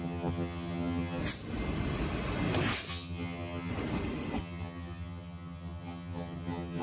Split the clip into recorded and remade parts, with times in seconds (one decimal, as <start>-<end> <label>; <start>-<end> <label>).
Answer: 0.0-1.2 remade; 1.2-2.9 recorded; 2.9-3.7 remade; 3.7-4.4 recorded; 4.4-6.8 remade